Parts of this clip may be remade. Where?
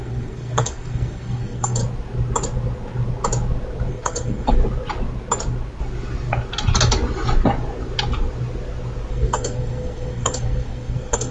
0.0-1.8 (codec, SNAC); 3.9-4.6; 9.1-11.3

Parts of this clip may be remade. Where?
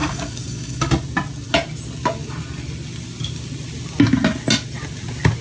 0.0-0.9 (codec, DAC)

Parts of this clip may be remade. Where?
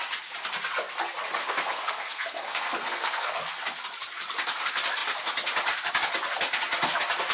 1.4-3.4 (codec, SNAC)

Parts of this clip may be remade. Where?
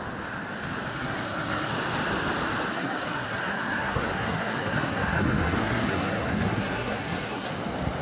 0.9-1.7 (codec, SNAC); 2.7-7.5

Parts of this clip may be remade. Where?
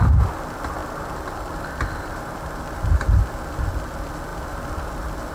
0.8-3.3 (vocoder, BigVGAN v2); 4.3-5.3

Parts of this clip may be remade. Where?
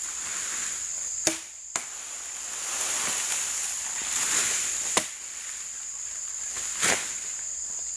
none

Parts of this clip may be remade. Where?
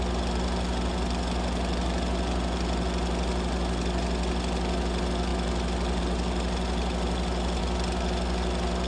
none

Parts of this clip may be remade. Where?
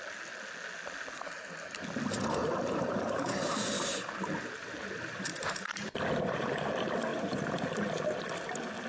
2.4-5.9 (vocoder, BigVGAN v2); 7.1-7.7